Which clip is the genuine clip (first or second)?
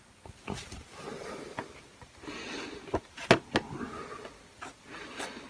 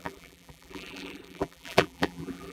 first